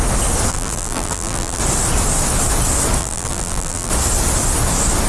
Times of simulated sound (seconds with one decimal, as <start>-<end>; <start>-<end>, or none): 0.5-1.6; 3.0-3.9